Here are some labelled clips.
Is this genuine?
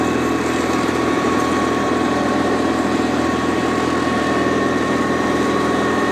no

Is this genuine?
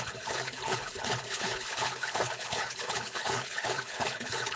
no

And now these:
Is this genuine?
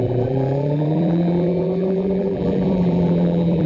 no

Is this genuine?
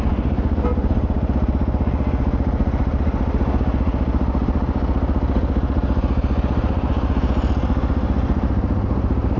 yes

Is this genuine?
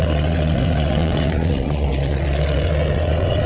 no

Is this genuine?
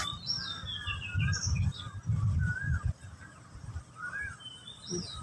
no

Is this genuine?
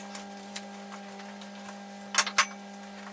yes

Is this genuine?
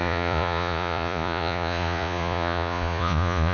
no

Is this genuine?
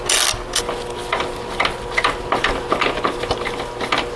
yes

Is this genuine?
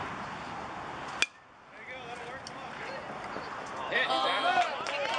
yes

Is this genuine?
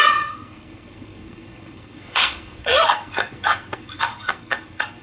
no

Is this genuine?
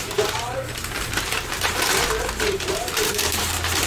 no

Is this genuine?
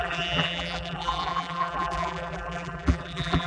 no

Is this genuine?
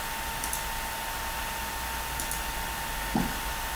yes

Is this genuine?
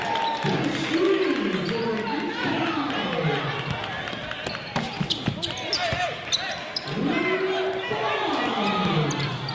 yes